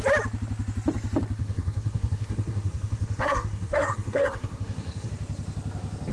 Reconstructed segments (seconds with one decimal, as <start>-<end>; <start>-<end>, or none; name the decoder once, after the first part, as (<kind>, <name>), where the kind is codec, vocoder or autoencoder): 1.4-5.1 (codec, SNAC)

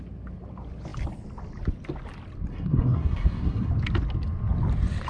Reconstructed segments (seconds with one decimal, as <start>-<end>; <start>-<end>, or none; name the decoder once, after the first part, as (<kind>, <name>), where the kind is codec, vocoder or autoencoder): 2.5-3.7 (codec, SNAC)

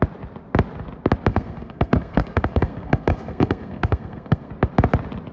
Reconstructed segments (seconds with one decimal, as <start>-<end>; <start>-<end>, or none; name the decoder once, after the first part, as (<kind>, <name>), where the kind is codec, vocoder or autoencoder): 1.3-4.5 (codec, SNAC)

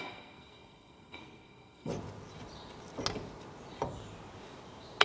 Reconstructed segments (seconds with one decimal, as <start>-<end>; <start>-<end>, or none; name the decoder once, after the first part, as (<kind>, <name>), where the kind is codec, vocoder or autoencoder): 0.0-1.9 (codec, SNAC)

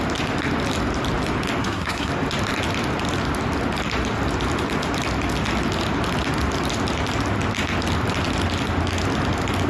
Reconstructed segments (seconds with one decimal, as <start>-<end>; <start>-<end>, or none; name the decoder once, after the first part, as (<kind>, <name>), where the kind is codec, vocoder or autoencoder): 1.6-2.1 (codec, SNAC)

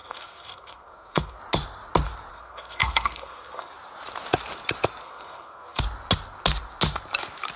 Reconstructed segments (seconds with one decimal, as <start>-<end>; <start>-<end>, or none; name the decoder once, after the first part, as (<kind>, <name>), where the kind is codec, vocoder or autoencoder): 0.0-1.4 (codec, SNAC); 2.3-3.7; 5.0-5.8

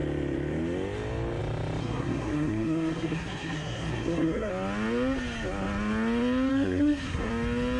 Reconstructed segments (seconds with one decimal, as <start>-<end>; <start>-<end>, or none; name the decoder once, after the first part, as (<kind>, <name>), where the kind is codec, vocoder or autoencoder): 1.8-4.5 (codec, SNAC); 6.5-7.3

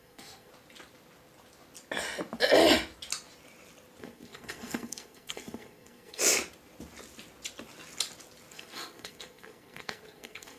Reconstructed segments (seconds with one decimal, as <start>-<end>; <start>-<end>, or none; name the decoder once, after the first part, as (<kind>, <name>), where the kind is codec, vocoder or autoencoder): 0.0-0.5 (codec, SNAC); 4.0-6.2; 8.5-10.6